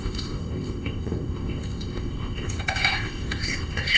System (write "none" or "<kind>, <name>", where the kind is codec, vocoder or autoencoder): codec, ZipCodec